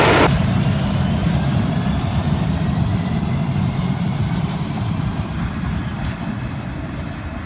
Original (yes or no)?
no